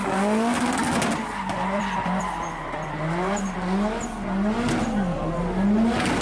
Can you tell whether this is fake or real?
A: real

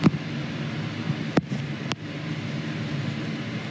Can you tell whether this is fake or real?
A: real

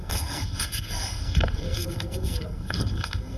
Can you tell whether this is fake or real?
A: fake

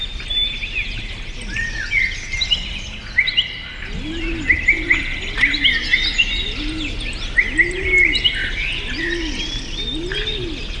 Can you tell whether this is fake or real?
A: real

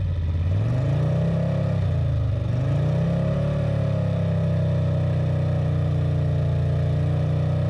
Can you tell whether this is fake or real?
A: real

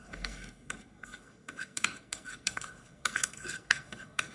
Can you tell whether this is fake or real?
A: fake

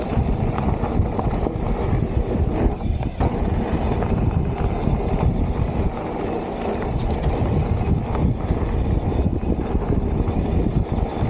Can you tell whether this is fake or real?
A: real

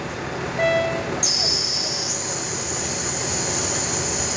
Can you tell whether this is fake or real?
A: real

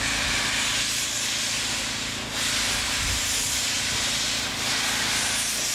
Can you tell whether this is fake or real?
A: real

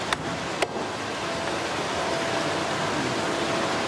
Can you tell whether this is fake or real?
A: real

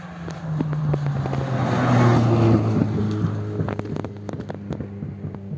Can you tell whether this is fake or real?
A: real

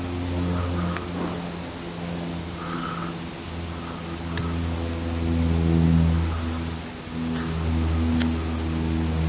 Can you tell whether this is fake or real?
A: real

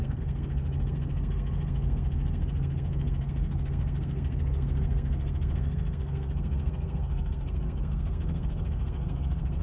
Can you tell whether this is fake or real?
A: fake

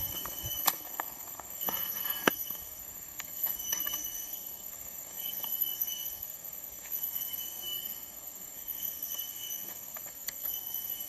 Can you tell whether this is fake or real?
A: fake